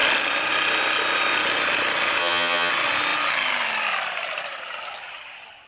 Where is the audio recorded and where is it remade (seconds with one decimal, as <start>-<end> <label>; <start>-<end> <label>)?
0.0-2.2 recorded; 2.2-2.7 remade; 2.7-5.7 recorded